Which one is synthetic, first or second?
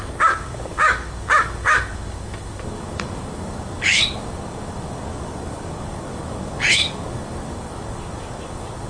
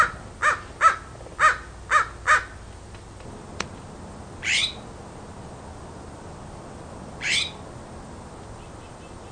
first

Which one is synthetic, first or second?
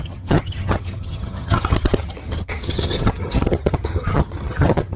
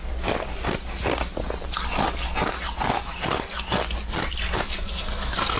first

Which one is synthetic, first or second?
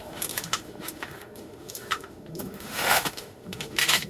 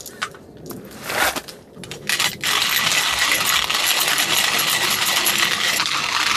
first